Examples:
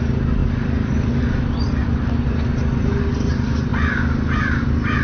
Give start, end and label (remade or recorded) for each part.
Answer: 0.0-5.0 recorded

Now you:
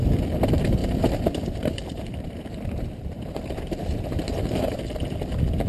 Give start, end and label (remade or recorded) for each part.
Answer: 0.0-0.8 recorded; 0.8-4.2 remade; 4.2-5.7 recorded

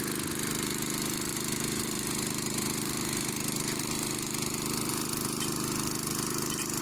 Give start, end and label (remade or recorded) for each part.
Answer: 0.0-1.3 recorded; 1.3-4.9 remade; 4.9-6.8 recorded

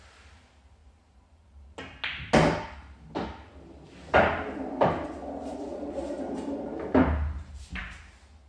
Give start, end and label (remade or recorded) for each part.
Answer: 0.0-8.5 recorded

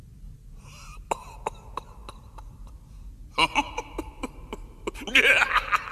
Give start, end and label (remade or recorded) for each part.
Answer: 0.0-5.9 recorded